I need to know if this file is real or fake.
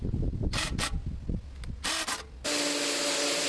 real